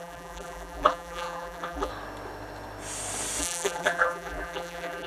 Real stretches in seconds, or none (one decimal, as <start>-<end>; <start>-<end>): 1.9-3.4

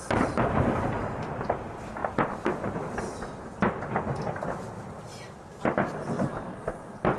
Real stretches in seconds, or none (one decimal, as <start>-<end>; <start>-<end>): 2.0-6.1

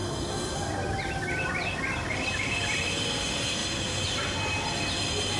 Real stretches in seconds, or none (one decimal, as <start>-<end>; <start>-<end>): 0.0-1.9; 3.6-4.5

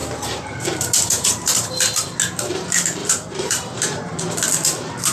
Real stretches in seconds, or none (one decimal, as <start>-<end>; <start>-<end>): 1.7-3.0; 4.1-5.1

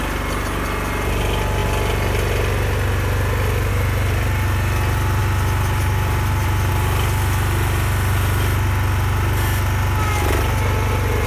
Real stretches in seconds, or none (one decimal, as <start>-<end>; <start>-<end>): 0.0-5.2; 6.7-11.3